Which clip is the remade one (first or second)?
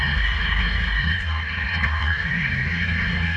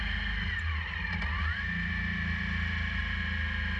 first